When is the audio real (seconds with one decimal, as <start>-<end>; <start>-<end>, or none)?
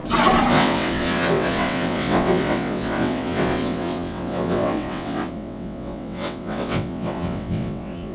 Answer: 0.0-0.5